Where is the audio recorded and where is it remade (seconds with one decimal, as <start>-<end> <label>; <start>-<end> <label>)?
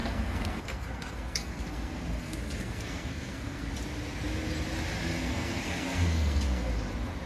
0.0-3.7 remade; 3.7-5.2 recorded; 5.2-6.7 remade; 6.7-7.3 recorded